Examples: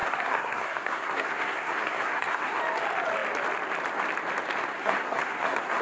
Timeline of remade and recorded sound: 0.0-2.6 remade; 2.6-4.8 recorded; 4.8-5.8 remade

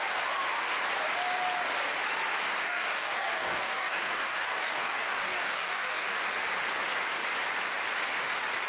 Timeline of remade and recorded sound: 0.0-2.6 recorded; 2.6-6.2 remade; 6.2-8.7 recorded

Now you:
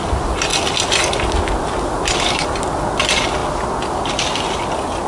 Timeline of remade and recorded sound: 0.0-5.1 recorded